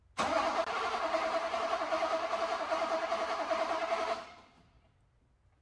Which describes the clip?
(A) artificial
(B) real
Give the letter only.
B